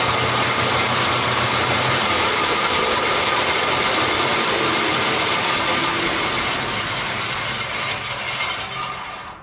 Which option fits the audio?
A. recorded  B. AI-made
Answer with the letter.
A